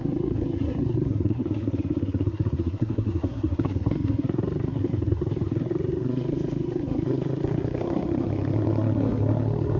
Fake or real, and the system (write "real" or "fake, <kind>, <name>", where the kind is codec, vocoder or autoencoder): fake, codec, SNAC